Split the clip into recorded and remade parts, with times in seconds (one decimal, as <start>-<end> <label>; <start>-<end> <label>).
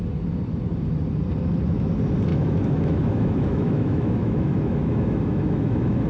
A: 0.0-2.3 recorded; 2.3-6.1 remade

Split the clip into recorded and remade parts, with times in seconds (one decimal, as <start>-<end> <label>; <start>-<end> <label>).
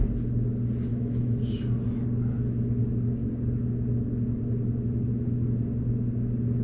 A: 0.0-0.9 recorded; 0.9-1.4 remade; 1.4-6.6 recorded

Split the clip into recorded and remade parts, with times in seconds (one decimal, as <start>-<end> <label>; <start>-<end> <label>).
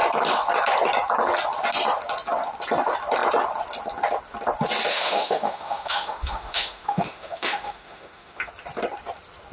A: 0.0-4.9 recorded; 4.9-8.5 remade; 8.5-9.5 recorded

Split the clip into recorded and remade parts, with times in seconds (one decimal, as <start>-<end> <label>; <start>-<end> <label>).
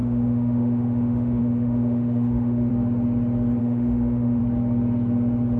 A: 0.0-2.7 remade; 2.7-3.6 recorded; 3.6-4.4 remade; 4.4-5.6 recorded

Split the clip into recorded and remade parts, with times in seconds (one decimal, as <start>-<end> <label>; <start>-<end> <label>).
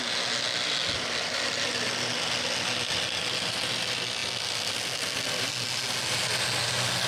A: 0.0-7.1 recorded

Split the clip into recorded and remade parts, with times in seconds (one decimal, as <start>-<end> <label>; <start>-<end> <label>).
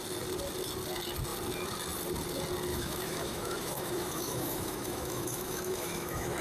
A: 0.0-2.7 recorded; 2.7-6.4 remade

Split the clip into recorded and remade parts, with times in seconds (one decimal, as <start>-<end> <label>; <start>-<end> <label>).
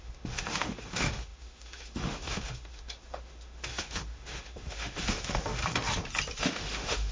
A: 0.0-5.6 remade; 5.6-6.4 recorded; 6.4-7.1 remade